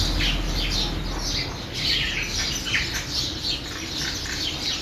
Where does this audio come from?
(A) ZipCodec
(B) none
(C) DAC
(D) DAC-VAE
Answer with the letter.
B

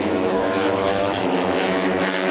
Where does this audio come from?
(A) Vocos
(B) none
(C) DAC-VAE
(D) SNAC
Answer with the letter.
C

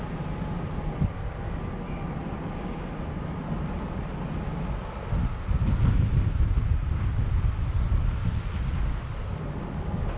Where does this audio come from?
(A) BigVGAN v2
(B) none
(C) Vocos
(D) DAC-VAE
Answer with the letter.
B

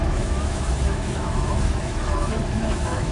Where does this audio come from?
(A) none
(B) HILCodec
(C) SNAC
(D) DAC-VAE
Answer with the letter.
D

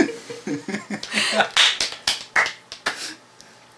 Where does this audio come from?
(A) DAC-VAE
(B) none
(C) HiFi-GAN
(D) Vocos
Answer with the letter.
B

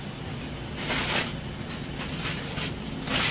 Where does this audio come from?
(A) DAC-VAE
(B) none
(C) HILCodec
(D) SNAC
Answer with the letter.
B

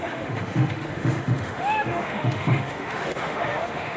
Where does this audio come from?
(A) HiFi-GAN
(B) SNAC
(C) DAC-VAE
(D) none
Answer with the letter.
C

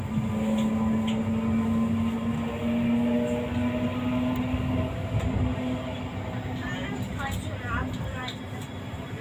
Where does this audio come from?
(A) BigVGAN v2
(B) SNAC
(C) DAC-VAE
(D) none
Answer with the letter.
D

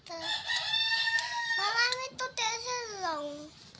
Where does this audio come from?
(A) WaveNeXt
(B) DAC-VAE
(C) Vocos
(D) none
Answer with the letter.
D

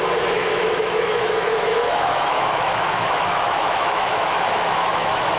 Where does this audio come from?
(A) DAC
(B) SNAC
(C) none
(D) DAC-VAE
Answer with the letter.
D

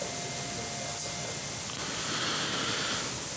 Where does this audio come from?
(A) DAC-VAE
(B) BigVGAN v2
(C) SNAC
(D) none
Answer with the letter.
D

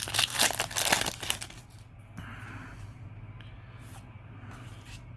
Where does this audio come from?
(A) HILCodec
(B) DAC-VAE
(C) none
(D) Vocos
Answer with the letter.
C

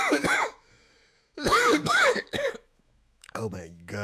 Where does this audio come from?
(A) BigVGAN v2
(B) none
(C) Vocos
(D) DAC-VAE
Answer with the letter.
D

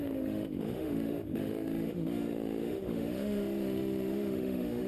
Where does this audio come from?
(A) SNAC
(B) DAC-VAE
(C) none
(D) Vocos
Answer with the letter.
B